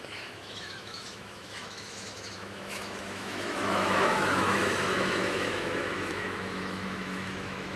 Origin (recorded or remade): remade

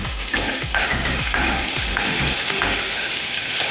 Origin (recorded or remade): remade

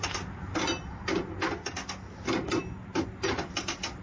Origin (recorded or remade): recorded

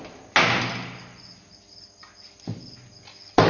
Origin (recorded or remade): recorded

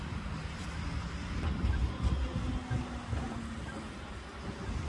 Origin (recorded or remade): recorded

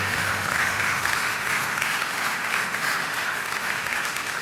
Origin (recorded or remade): remade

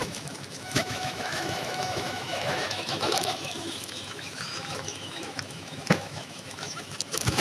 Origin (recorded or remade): remade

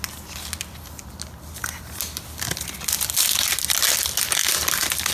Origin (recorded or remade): recorded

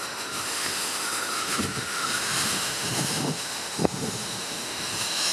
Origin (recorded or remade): remade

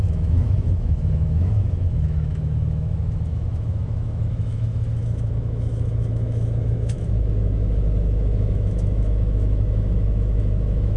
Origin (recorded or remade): remade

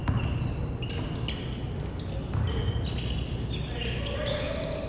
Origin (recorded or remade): recorded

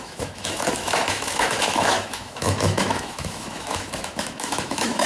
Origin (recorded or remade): remade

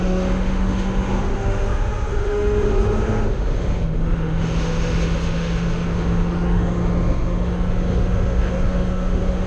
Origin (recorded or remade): remade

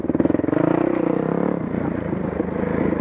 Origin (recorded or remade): recorded